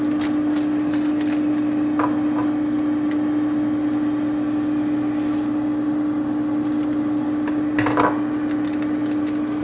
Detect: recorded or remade recorded